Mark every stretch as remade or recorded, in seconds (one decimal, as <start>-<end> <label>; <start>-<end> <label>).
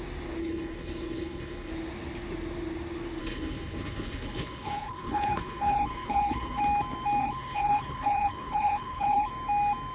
0.0-0.4 recorded; 0.4-1.7 remade; 1.7-3.2 recorded; 3.2-6.6 remade; 6.6-7.2 recorded; 7.2-9.3 remade; 9.3-9.9 recorded